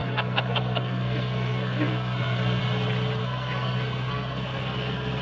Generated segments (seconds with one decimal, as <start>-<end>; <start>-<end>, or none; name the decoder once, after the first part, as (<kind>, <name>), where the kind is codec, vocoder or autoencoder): 0.0-2.6 (codec, SNAC); 3.2-5.2

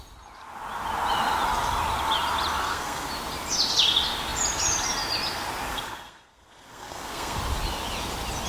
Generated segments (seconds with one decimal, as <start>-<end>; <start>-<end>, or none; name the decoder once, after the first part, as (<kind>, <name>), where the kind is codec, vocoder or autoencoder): 2.6-3.1 (codec, SNAC); 5.7-7.4